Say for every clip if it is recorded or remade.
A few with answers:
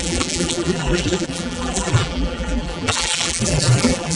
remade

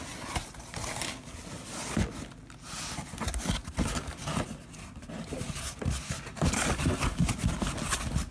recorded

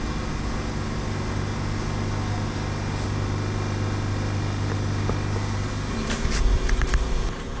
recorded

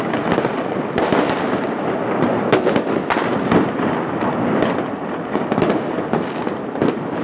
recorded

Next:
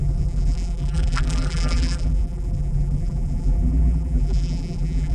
remade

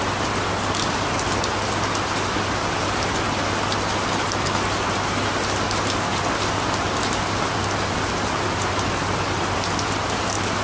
recorded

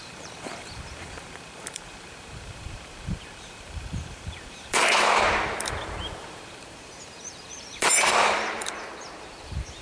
remade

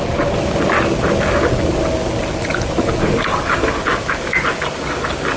recorded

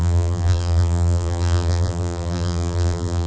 remade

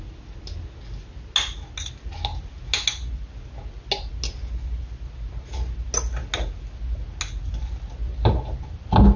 recorded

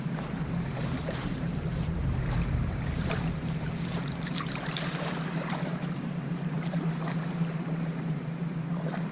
remade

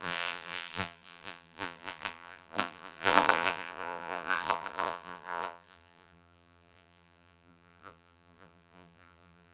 remade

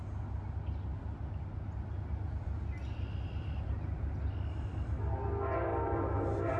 recorded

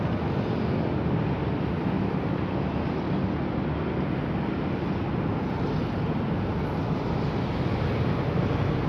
recorded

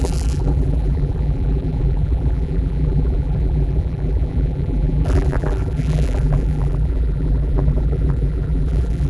remade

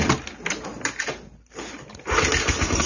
recorded